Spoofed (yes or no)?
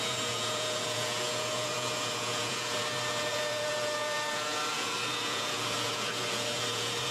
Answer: yes